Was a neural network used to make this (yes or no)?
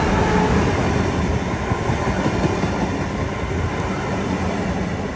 no